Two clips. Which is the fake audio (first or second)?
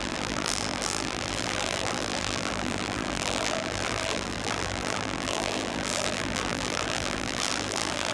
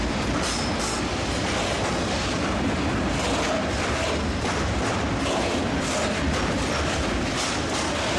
first